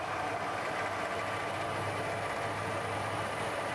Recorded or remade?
recorded